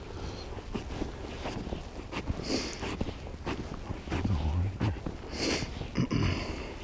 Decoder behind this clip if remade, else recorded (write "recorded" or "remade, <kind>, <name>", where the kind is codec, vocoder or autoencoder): recorded